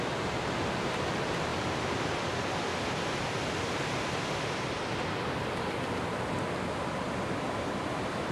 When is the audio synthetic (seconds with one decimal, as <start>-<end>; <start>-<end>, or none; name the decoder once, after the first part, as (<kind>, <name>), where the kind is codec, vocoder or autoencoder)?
none